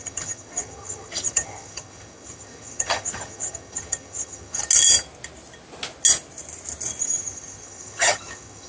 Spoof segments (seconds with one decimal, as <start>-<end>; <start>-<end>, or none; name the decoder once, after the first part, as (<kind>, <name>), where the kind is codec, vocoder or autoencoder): 0.0-4.6 (vocoder, HiFi-GAN); 7.0-8.7